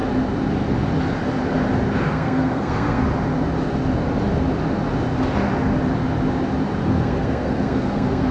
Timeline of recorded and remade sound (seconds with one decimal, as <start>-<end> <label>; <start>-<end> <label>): 0.0-2.1 recorded; 2.1-3.0 remade; 3.0-6.8 recorded; 6.8-8.3 remade

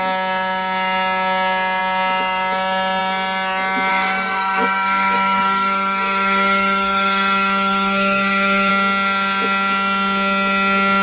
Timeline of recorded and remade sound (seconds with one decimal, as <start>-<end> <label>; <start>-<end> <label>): 0.0-3.9 recorded; 3.9-8.7 remade; 8.7-11.0 recorded

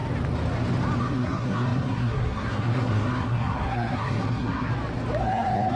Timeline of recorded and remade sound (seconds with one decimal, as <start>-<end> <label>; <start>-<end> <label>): 0.0-1.0 recorded; 1.0-4.7 remade; 4.7-5.2 recorded; 5.2-5.8 remade